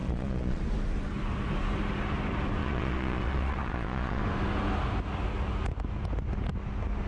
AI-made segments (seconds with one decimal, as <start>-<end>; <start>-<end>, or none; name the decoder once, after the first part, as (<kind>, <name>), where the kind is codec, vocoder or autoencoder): 0.0-0.6 (vocoder, Vocos); 2.6-4.2